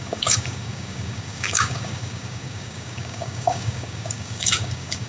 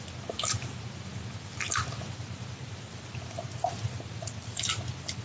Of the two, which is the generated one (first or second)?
first